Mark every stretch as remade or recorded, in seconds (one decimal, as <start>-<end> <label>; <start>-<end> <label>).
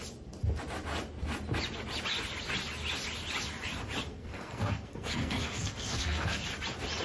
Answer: 0.0-4.1 recorded; 4.1-6.4 remade; 6.4-7.0 recorded